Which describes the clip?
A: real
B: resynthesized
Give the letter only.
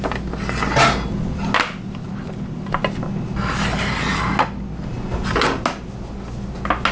A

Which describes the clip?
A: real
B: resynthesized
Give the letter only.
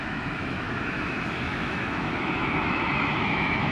B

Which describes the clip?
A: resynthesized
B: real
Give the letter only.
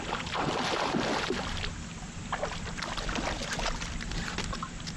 B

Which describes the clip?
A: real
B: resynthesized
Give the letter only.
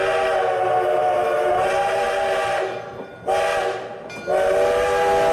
A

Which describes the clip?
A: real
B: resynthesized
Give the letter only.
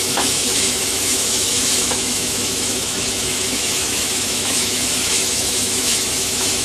B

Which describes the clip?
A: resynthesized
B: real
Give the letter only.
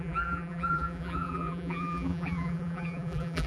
A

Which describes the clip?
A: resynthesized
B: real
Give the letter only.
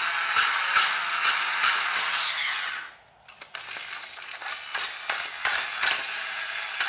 B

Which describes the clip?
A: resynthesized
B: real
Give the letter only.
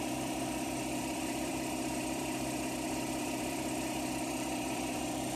A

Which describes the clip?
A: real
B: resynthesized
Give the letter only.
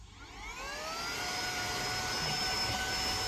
A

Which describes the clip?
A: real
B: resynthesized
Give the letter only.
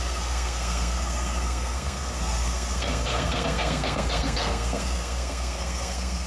B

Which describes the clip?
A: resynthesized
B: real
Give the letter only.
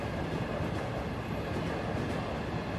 B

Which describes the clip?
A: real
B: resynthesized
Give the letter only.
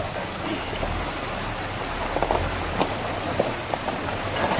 A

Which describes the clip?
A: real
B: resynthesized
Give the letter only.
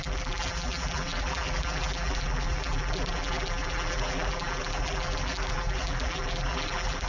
B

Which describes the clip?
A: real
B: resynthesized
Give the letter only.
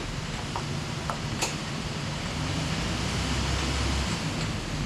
A